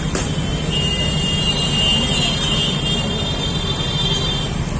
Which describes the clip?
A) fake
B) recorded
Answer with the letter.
B